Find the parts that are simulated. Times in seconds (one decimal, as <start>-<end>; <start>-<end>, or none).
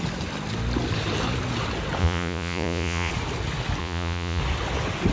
2.0-3.1; 3.8-4.4